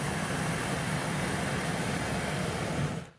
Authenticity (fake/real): real